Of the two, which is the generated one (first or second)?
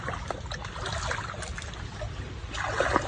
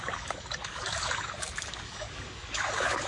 second